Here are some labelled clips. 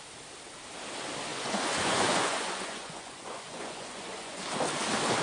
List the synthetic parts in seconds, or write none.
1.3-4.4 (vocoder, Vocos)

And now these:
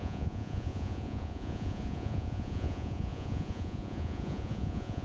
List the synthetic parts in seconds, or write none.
0.0-5.0 (vocoder, Vocos)

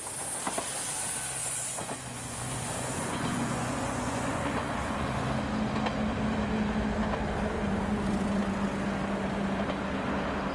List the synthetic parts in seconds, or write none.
1.4-5.3 (vocoder, Vocos)

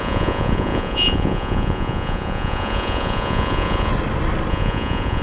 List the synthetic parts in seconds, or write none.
0.0-3.9 (vocoder, Vocos); 4.5-5.2